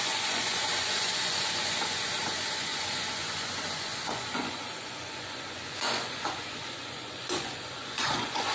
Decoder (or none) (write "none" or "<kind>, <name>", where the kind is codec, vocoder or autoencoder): vocoder, Vocos